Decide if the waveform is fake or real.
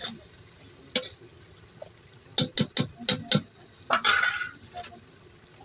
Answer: real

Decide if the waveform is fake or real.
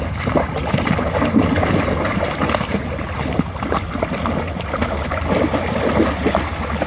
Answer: real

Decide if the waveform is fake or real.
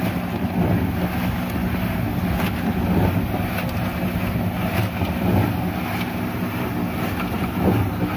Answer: real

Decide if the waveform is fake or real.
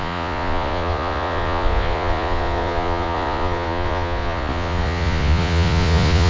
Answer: fake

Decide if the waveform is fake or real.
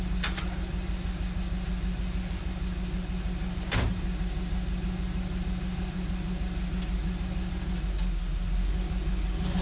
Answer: real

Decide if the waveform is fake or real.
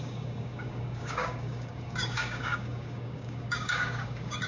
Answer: fake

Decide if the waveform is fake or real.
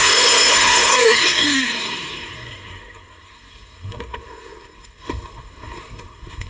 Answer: fake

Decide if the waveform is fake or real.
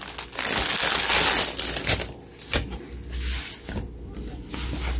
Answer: real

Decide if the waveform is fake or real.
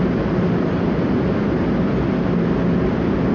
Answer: real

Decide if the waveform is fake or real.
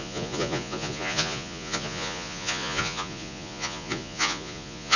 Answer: fake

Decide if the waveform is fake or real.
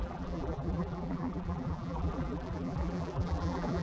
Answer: fake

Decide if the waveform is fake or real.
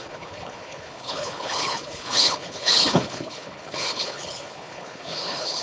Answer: fake